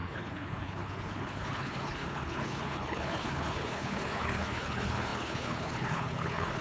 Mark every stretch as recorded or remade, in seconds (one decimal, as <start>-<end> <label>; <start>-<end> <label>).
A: 0.0-6.6 remade